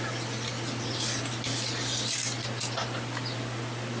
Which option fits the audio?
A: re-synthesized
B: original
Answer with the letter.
B